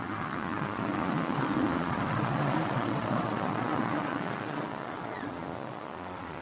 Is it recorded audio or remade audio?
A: remade